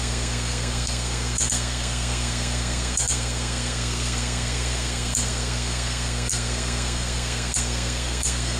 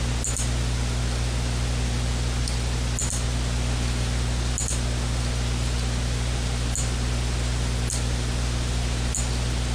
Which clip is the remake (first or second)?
first